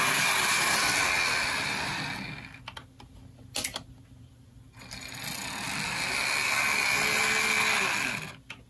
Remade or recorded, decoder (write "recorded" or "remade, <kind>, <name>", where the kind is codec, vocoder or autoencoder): recorded